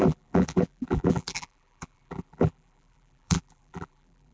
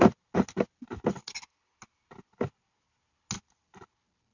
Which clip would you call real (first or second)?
second